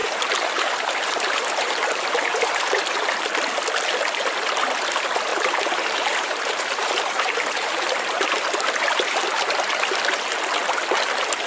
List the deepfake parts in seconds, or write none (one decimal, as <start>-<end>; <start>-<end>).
0.0-2.8; 5.3-9.2